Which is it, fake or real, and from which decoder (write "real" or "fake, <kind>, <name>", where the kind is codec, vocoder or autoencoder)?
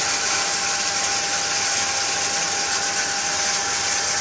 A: real